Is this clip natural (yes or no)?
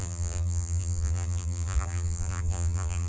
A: no